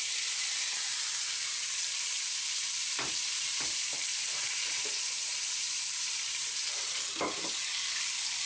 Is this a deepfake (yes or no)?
yes